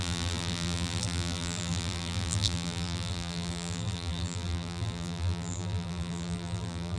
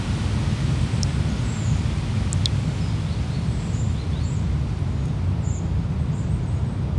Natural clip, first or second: second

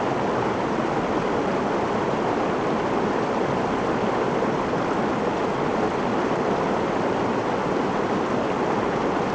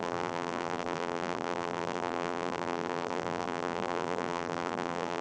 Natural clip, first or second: first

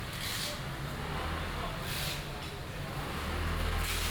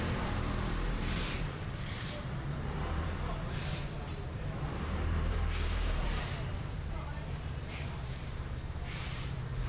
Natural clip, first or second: first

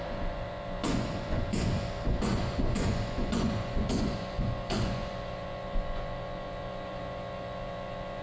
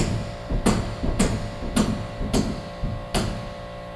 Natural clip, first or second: second